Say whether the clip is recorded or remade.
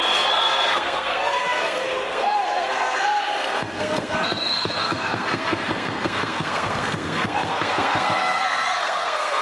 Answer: remade